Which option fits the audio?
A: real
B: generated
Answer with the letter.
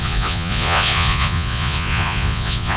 B